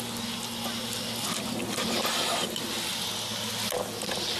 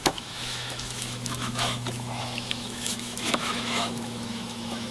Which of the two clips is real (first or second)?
first